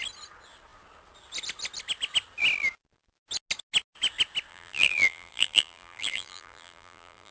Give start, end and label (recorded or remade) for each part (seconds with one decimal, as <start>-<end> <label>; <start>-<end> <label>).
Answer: 0.0-4.5 recorded; 4.5-7.3 remade